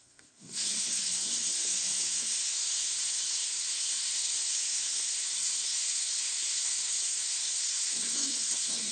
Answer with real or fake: fake